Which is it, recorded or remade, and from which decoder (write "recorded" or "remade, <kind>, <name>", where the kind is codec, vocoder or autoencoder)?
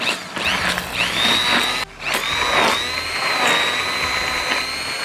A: recorded